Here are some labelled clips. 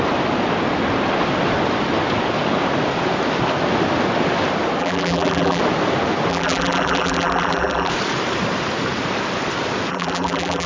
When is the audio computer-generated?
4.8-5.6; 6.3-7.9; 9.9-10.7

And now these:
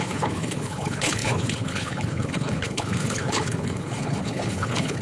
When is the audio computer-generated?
0.0-5.0

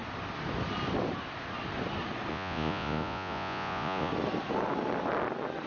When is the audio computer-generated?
2.3-4.1